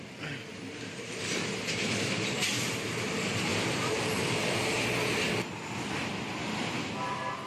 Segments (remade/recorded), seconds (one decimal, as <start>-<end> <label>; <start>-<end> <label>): 0.0-0.5 recorded; 0.5-2.5 remade; 2.5-3.5 recorded; 3.5-4.2 remade; 4.2-6.4 recorded; 6.4-6.9 remade; 6.9-7.5 recorded